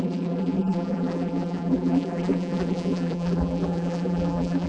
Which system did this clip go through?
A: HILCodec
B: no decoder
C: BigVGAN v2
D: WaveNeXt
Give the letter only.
C